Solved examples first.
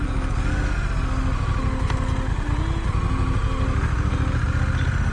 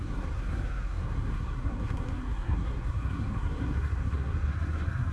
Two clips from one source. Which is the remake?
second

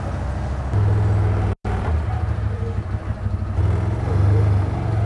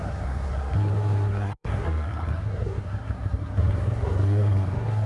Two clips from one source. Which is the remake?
second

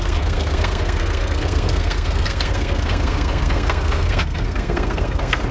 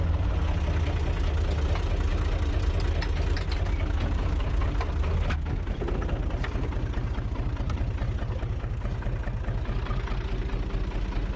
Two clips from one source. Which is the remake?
first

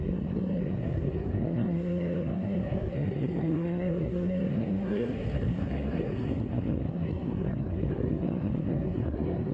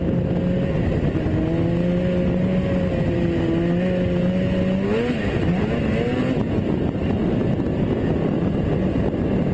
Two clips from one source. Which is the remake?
first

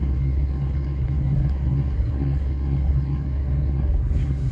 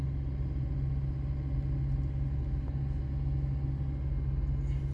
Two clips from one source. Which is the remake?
first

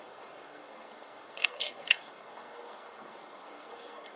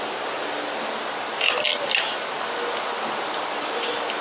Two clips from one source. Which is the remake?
first